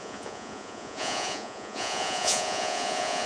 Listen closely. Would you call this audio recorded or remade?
remade